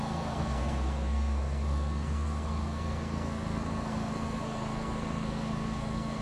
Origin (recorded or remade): remade